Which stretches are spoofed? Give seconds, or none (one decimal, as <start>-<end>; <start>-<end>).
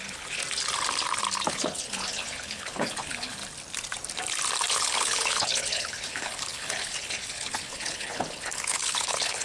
0.0-0.4; 1.5-3.4; 4.7-9.4